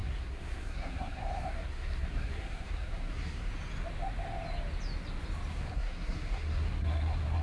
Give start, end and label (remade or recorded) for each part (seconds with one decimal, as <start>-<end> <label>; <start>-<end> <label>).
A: 0.0-3.5 remade; 3.5-5.5 recorded; 5.5-7.4 remade